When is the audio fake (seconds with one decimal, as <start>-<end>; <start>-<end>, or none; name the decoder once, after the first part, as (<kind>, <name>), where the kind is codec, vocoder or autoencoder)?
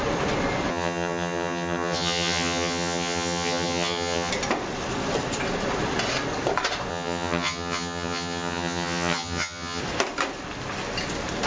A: 0.7-4.3 (vocoder, HiFi-GAN); 6.9-9.8